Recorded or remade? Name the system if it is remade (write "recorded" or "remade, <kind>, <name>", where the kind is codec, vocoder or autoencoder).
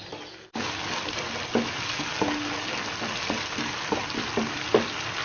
recorded